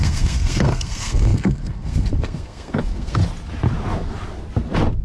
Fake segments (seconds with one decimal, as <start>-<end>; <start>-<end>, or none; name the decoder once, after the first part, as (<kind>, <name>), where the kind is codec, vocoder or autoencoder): 0.0-3.2 (codec, SNAC)